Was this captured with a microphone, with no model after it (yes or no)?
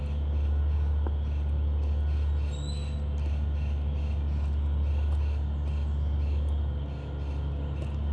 yes